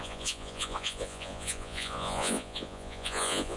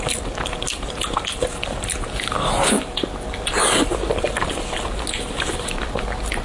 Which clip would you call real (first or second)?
second